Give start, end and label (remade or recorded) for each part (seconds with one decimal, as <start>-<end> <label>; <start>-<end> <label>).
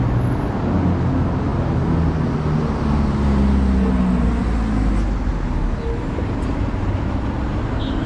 0.0-8.1 recorded